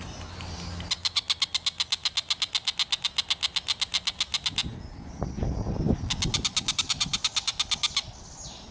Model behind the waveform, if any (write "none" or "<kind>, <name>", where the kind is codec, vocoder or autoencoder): none